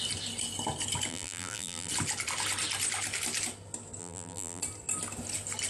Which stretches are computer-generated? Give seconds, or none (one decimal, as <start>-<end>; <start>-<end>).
1.1-1.9; 4.0-4.6

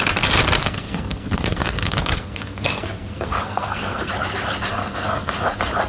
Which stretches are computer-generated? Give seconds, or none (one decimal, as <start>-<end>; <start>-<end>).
0.6-4.1; 4.7-5.3